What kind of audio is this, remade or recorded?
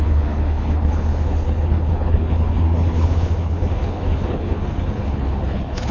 remade